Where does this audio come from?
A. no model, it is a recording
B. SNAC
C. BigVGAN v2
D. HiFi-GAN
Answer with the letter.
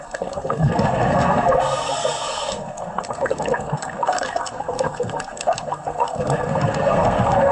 B